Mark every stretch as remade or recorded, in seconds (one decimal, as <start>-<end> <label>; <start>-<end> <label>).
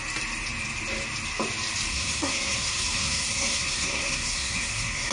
0.0-1.9 recorded; 1.9-5.1 remade